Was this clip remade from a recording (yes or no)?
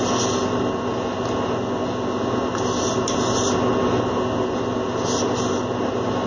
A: no